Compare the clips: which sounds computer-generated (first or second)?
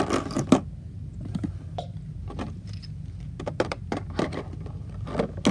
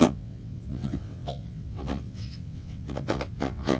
second